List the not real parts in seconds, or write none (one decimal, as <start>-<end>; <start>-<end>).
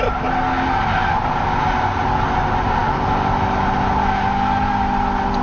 none